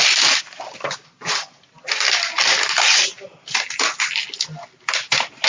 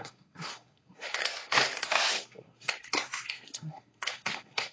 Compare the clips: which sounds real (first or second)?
first